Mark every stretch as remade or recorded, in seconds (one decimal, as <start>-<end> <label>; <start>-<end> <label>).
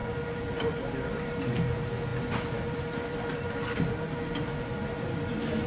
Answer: 0.0-5.7 recorded